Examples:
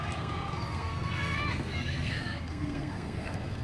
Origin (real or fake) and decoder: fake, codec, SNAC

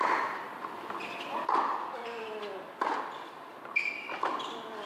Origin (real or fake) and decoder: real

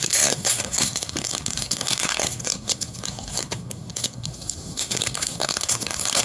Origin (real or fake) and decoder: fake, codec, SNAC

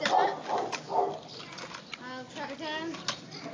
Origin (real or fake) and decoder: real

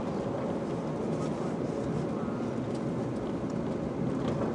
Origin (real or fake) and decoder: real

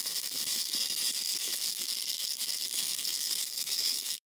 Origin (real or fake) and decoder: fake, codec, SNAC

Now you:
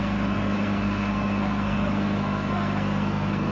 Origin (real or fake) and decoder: fake, codec, SNAC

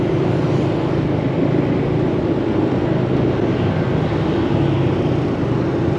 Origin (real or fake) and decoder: real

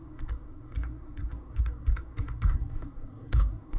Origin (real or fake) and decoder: fake, codec, SNAC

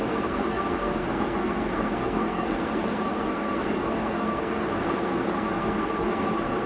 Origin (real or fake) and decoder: fake, codec, SNAC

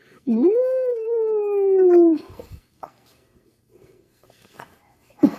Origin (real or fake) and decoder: fake, codec, SNAC